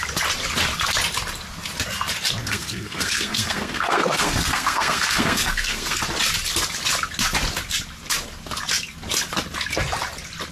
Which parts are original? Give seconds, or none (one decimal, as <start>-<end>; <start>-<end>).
0.0-2.4; 6.0-10.5